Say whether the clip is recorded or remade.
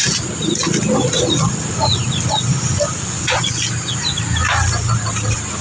recorded